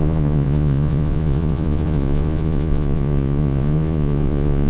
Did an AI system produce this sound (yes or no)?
yes